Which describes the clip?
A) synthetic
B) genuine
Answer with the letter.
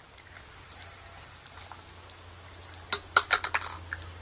B